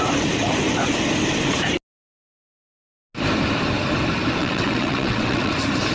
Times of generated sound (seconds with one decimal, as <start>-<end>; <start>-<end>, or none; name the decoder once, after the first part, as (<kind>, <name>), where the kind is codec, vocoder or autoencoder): 4.4-5.5 (vocoder, WaveNeXt)